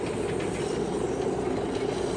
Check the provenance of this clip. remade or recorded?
recorded